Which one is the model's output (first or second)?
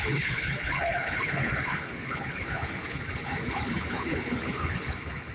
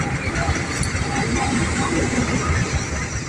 first